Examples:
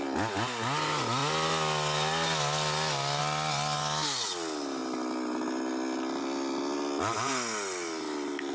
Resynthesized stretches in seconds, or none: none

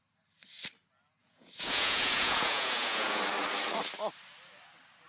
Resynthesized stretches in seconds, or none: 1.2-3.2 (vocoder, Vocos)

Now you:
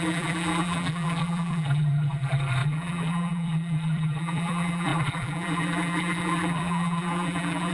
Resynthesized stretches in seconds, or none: 0.0-7.7 (vocoder, BigVGAN v2)

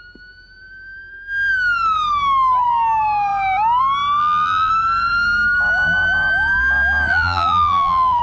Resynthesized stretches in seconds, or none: 4.2-4.7 (vocoder, BigVGAN v2); 7.1-8.2

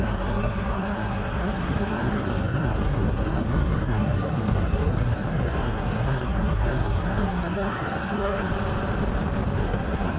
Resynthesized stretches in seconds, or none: 0.0-8.5 (codec, SNAC); 9.6-10.2

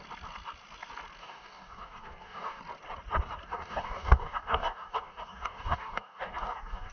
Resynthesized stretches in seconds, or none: 1.2-2.6 (codec, DAC); 3.5-6.9